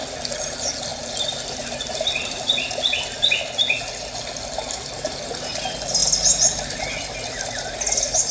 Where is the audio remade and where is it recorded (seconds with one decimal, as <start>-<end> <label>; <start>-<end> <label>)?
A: 0.0-0.9 recorded; 0.9-3.3 remade; 3.3-6.0 recorded; 6.0-7.7 remade; 7.7-8.3 recorded